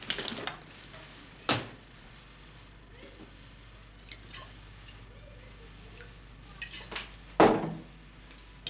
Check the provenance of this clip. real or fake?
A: real